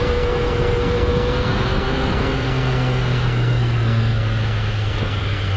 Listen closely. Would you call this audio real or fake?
fake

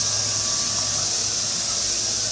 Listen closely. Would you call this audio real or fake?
real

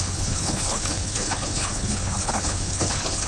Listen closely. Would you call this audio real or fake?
fake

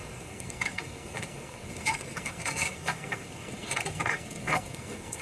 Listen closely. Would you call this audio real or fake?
fake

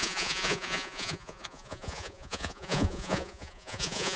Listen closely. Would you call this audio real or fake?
fake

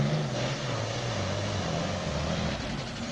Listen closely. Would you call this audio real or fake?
real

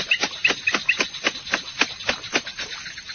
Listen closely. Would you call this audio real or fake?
real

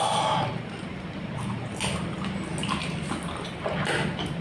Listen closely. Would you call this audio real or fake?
real